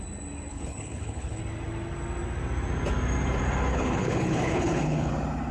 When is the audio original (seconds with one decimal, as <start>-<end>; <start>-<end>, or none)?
0.0-0.5; 1.4-3.7; 5.1-5.5